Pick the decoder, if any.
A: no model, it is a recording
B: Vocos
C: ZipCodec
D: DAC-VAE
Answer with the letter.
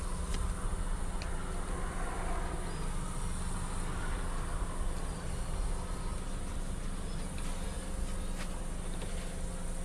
A